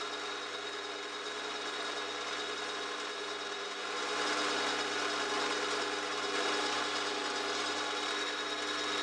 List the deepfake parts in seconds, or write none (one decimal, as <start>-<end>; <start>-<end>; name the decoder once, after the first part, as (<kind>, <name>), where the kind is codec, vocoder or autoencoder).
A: none